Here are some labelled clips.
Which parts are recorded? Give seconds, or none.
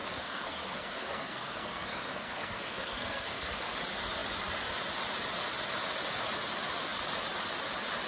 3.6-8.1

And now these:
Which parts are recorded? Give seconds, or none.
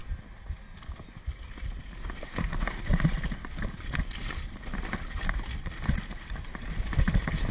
0.0-7.5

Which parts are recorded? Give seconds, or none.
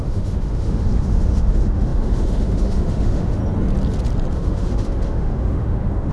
3.4-4.3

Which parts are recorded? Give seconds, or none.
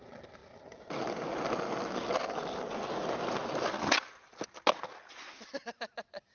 0.0-6.3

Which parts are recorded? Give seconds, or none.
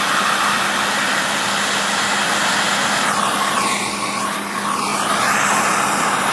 0.0-6.3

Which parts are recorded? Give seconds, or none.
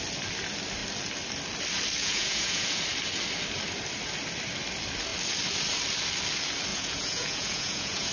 0.0-2.0; 2.8-6.7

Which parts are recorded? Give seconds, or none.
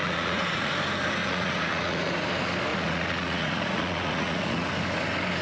0.7-1.2; 2.1-2.7; 4.7-5.4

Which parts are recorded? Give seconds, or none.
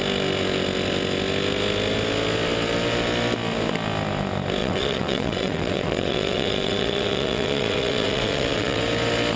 0.0-4.6; 8.8-9.4